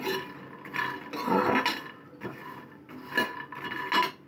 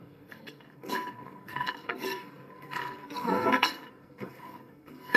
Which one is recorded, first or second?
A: first